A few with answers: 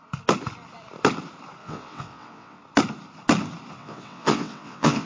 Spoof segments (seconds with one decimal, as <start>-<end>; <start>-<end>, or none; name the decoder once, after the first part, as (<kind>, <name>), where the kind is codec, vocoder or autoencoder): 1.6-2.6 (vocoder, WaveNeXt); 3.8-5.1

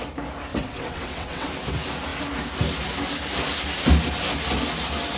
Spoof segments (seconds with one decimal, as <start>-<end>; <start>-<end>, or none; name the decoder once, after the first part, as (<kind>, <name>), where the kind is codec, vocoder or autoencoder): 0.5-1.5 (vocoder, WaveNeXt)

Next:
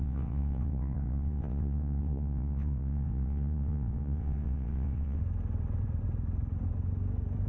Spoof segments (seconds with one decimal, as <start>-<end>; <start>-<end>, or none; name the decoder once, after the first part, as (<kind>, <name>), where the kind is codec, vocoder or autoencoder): 0.0-5.2 (vocoder, WaveNeXt)

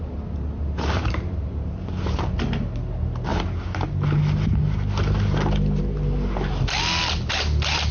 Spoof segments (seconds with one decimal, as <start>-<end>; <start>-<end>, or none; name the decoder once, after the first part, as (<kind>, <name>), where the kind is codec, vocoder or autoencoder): none

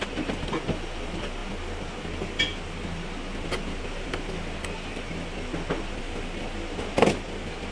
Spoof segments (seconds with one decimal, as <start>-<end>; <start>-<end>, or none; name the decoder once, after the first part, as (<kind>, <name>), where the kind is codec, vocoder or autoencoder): none